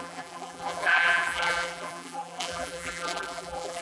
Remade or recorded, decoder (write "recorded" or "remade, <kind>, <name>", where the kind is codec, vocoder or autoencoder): remade, vocoder, BigVGAN v2